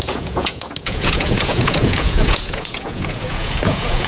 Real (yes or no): no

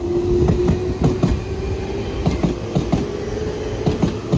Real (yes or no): yes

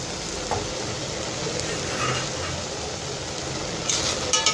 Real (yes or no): yes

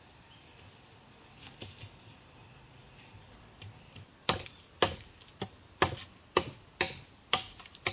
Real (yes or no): yes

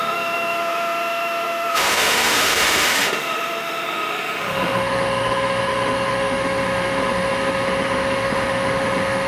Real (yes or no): no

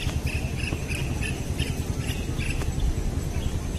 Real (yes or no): yes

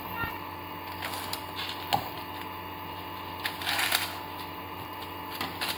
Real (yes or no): yes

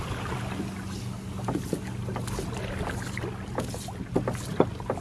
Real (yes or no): yes